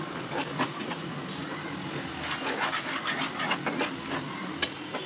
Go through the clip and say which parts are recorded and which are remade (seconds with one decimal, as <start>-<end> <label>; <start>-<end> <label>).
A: 0.0-0.5 recorded; 0.5-1.2 remade; 1.2-5.1 recorded